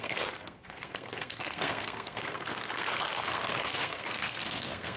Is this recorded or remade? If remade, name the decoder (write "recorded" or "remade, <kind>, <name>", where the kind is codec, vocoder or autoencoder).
remade, codec, SNAC